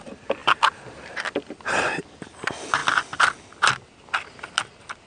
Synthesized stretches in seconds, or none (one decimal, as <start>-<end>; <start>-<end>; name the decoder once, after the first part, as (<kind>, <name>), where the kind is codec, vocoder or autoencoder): 0.0-2.8 (vocoder, BigVGAN v2)